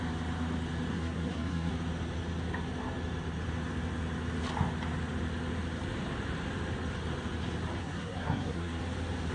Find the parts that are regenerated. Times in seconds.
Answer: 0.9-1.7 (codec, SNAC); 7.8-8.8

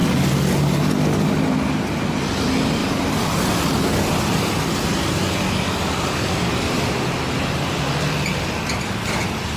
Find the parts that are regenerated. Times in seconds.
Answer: none